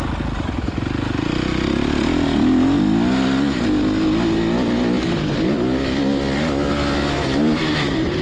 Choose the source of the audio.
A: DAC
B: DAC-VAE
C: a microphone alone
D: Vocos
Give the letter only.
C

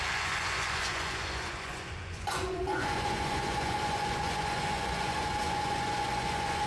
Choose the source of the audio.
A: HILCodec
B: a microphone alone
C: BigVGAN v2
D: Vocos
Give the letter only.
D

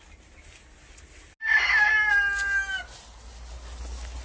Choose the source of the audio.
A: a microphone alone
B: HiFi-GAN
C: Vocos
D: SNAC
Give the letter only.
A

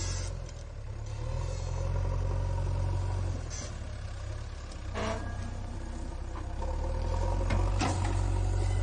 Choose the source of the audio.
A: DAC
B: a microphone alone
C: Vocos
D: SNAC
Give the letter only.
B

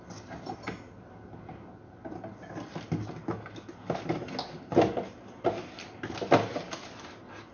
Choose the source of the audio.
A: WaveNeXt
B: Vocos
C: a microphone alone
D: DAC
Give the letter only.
C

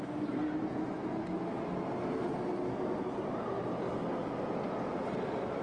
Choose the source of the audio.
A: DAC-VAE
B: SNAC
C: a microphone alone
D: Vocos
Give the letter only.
C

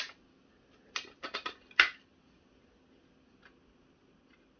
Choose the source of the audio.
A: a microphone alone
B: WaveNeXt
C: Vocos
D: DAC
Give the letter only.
A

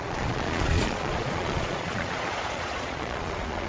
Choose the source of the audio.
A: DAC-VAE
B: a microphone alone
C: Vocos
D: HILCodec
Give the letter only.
C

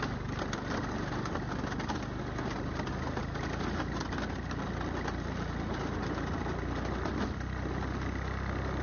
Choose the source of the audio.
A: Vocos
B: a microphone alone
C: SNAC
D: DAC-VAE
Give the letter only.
B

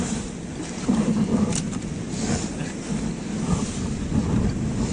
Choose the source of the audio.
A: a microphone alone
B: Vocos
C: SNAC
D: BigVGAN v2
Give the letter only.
A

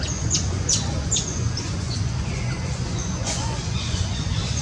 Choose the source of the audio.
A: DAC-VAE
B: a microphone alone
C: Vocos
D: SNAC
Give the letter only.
C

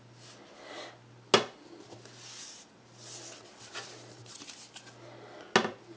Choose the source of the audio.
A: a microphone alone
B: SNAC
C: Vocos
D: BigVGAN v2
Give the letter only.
A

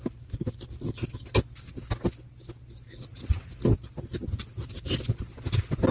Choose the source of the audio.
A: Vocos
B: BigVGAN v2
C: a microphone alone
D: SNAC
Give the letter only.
C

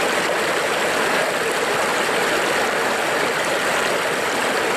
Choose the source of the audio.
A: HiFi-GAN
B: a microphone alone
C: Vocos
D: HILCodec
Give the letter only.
B